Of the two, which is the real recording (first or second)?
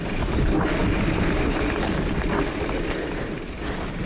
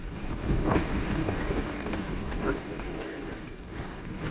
first